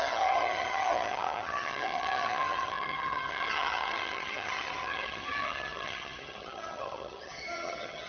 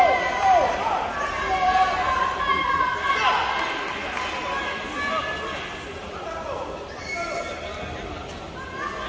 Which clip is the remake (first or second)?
first